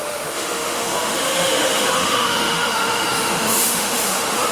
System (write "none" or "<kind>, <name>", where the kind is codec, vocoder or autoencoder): autoencoder, DAC-VAE